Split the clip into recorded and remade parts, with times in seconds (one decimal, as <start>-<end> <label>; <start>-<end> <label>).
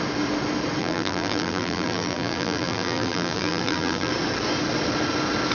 0.0-0.8 recorded; 0.8-4.1 remade; 4.1-5.5 recorded